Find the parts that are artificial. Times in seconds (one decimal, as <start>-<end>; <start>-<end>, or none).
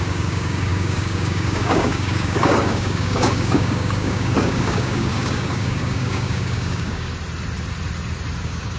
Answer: 0.0-7.1; 8.4-8.8